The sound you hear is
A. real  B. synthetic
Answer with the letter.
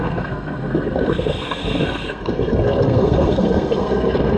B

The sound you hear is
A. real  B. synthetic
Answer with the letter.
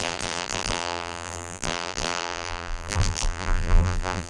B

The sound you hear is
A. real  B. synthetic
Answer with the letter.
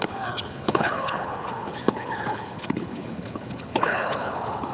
B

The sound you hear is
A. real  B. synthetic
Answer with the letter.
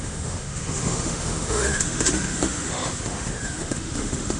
B